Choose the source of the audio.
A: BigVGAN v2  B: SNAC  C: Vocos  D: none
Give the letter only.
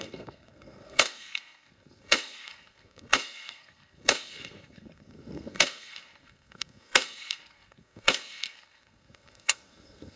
B